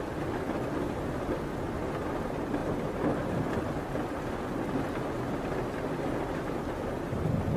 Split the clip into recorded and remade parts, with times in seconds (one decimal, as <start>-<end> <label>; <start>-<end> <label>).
0.0-7.6 recorded